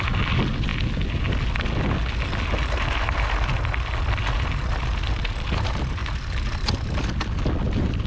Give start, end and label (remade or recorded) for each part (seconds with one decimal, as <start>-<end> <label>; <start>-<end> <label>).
0.0-8.1 recorded